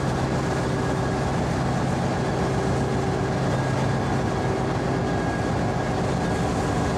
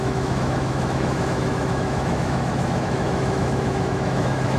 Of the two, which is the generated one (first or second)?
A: second